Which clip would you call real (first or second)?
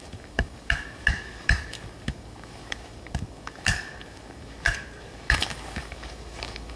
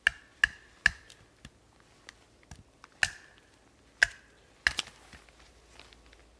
second